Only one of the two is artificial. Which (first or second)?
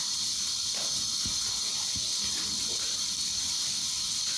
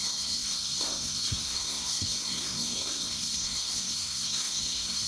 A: second